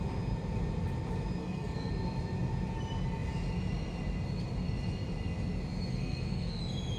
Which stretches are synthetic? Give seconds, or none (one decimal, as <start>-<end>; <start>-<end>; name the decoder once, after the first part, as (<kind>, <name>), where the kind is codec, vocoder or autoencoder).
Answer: 1.4-1.9 (codec, SNAC); 5.9-6.6